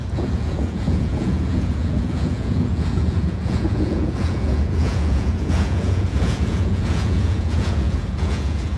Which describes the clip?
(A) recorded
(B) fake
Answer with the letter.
B